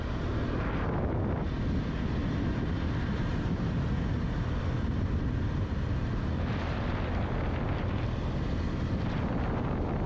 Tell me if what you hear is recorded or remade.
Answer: recorded